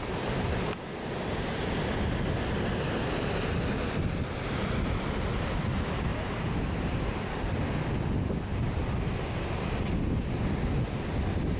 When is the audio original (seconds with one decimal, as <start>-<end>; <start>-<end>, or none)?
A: 0.0-11.6